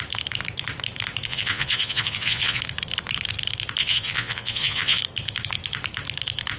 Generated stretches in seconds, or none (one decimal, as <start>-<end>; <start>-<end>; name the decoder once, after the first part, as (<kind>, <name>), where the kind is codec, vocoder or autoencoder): 1.3-2.6 (vocoder, Vocos); 3.8-5.0